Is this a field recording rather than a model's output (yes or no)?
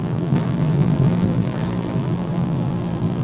no